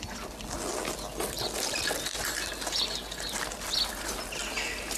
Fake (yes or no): no